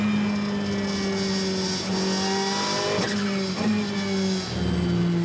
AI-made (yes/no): no